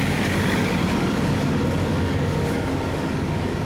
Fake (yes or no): yes